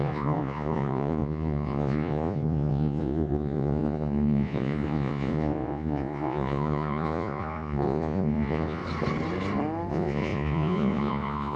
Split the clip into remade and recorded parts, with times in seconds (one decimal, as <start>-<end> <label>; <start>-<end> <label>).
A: 0.0-8.8 remade; 8.8-9.9 recorded; 9.9-11.6 remade